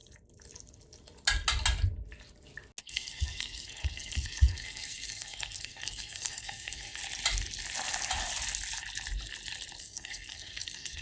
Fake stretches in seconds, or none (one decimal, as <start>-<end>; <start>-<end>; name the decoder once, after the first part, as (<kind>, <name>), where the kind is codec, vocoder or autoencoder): 2.8-7.0 (codec, SNAC); 9.8-11.0